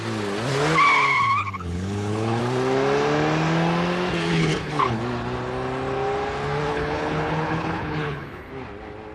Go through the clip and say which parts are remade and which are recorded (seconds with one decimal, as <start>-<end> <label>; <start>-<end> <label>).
0.0-1.4 recorded; 1.4-2.4 remade; 2.4-4.3 recorded; 4.3-5.0 remade; 5.0-6.7 recorded; 6.7-8.5 remade; 8.5-9.1 recorded